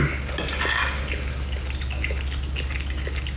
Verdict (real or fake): real